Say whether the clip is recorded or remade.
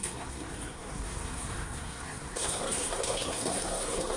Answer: remade